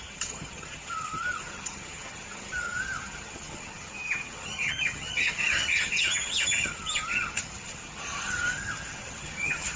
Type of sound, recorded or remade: remade